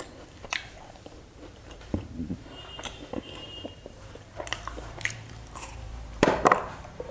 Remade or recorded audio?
remade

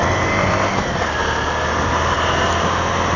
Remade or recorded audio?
recorded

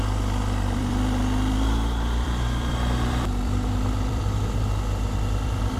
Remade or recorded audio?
remade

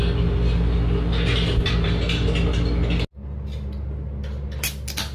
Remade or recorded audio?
recorded